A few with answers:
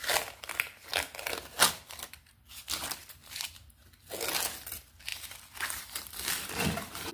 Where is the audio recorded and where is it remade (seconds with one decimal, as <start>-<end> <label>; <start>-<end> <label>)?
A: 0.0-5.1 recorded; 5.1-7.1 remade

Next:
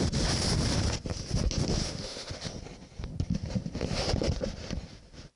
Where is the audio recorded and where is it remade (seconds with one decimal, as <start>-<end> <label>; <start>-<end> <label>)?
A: 0.0-1.8 recorded; 1.8-2.3 remade; 2.3-5.4 recorded

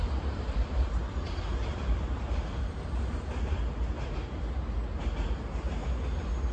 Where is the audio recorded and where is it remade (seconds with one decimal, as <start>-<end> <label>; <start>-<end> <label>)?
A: 0.0-3.9 remade; 3.9-6.5 recorded

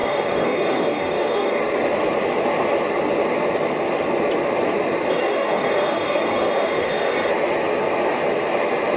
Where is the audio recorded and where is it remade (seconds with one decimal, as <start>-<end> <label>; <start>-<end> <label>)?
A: 0.0-1.6 remade; 1.6-5.1 recorded; 5.1-7.3 remade; 7.3-9.0 recorded